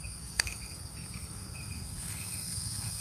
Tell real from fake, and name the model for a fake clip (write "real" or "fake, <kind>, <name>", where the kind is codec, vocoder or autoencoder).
fake, codec, SNAC